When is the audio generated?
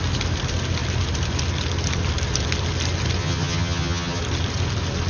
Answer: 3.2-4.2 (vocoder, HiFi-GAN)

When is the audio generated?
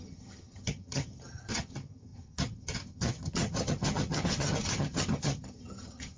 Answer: 0.0-6.2 (vocoder, HiFi-GAN)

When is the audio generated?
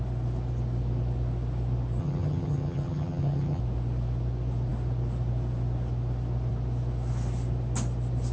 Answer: 2.0-3.6 (vocoder, HiFi-GAN)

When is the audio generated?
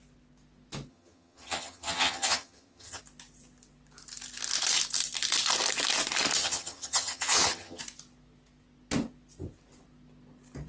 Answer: 0.9-3.0 (vocoder, HiFi-GAN); 6.4-7.8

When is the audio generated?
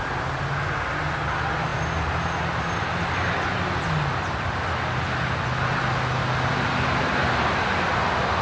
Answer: none